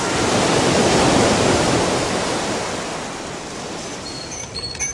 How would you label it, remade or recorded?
recorded